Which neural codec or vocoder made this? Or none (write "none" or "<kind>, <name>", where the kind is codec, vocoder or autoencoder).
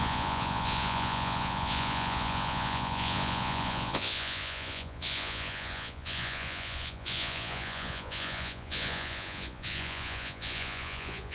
vocoder, Vocos